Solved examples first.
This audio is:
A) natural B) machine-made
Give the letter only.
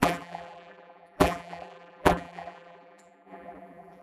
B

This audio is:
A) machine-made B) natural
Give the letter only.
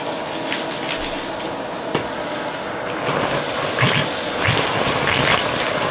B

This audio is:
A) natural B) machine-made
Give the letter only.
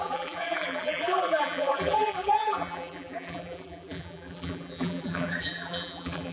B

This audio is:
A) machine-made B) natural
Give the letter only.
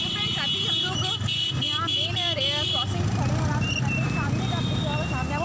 B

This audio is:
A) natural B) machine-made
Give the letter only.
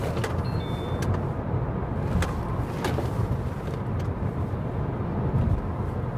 A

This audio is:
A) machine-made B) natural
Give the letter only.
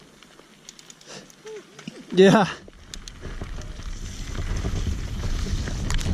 B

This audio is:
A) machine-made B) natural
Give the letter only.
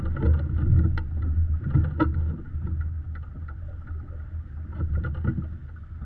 B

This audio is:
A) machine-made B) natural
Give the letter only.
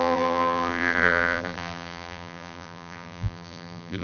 A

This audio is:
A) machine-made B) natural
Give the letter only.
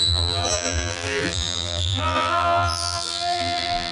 A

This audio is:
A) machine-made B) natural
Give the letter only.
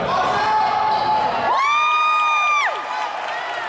B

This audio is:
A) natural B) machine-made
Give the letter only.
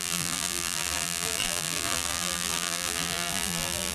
B